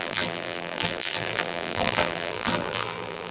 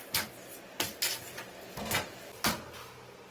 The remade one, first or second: first